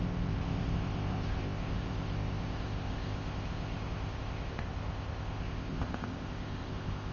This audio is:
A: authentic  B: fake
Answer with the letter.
B